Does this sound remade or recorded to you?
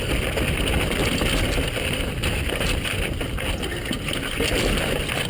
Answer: recorded